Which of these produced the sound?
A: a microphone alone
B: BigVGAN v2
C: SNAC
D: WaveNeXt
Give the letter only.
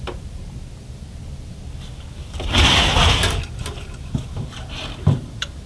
B